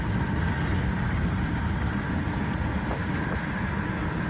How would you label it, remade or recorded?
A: recorded